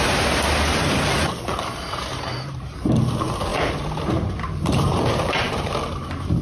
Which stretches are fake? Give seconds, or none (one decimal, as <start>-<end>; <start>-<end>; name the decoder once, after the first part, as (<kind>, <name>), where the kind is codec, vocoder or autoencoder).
0.9-2.7 (vocoder, BigVGAN v2); 3.5-5.7